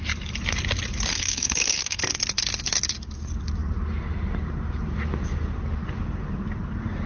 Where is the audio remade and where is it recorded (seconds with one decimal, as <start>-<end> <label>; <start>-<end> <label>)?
0.0-1.1 recorded; 1.1-2.0 remade; 2.0-7.1 recorded